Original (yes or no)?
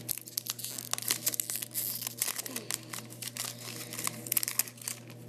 yes